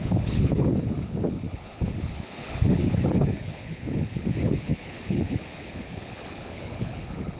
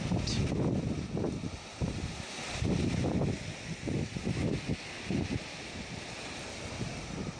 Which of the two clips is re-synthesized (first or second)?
first